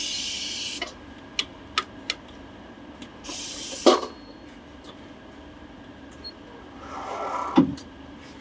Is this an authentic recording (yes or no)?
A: yes